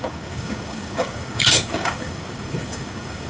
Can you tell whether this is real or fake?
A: fake